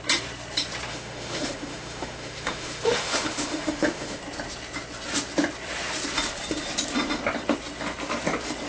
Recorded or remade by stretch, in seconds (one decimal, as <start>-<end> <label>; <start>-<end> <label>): 0.0-0.9 recorded; 0.9-4.2 remade; 4.2-8.7 recorded

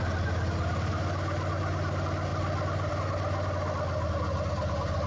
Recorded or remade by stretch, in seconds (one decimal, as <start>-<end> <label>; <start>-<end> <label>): 0.0-5.1 recorded

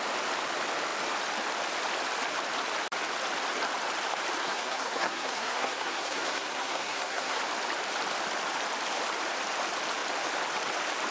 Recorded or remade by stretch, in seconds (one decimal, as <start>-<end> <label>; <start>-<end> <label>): 0.0-4.4 recorded; 4.4-7.4 remade; 7.4-11.1 recorded

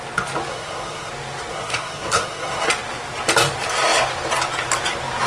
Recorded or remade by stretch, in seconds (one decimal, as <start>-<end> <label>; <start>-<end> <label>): 0.0-0.5 recorded; 0.5-1.1 remade; 1.1-1.5 recorded; 1.5-2.7 remade; 2.7-5.3 recorded

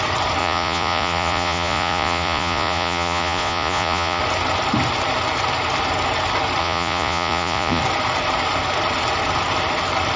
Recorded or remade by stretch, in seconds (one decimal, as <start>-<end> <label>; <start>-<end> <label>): 0.0-0.4 recorded; 0.4-4.2 remade; 4.2-6.6 recorded; 6.6-7.8 remade; 7.8-10.2 recorded

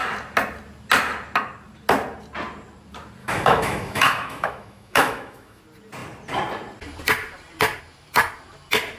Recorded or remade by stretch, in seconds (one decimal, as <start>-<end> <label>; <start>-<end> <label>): 0.0-3.2 recorded; 3.2-5.6 remade; 5.6-9.0 recorded

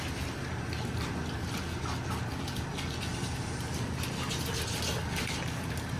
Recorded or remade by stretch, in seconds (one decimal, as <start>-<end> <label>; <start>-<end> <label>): 0.0-6.0 recorded

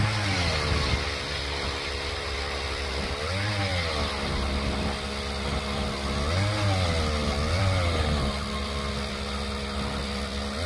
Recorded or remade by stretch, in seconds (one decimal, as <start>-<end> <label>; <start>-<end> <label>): 0.0-10.7 recorded